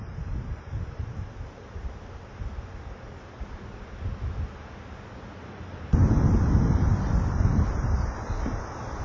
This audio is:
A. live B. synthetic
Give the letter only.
A